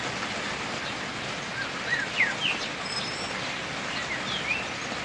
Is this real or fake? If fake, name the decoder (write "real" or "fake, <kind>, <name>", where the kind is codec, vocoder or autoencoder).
real